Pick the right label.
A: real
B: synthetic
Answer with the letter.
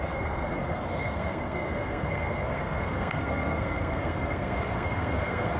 B